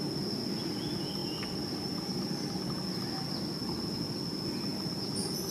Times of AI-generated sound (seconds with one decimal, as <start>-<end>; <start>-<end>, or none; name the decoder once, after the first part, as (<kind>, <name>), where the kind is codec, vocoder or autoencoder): none